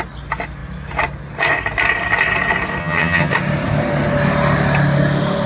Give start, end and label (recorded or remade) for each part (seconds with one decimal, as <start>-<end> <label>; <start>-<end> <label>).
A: 0.0-2.8 recorded; 2.8-3.3 remade; 3.3-5.5 recorded